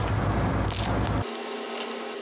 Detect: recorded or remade recorded